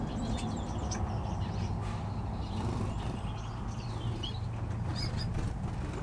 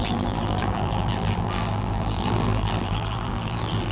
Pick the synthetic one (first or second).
second